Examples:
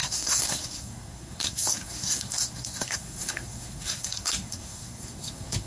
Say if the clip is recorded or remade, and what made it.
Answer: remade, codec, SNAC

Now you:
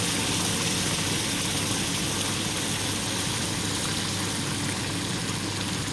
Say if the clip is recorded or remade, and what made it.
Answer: recorded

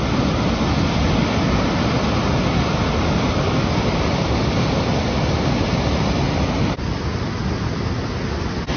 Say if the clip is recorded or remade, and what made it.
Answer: recorded